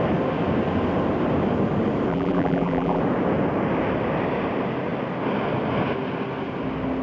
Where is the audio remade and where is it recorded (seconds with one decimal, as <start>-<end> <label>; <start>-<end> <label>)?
0.0-2.1 recorded; 2.1-3.0 remade; 3.0-7.0 recorded